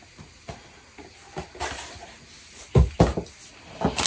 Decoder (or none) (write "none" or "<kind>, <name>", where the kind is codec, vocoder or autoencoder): none